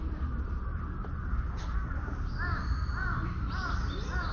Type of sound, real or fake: real